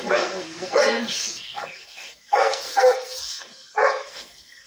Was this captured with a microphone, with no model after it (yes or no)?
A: no